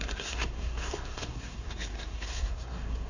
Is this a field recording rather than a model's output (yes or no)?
no